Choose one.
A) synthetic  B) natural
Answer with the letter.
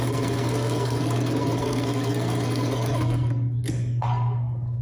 A